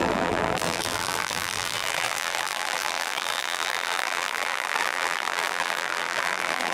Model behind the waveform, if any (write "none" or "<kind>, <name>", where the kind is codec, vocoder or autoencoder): vocoder, BigVGAN v2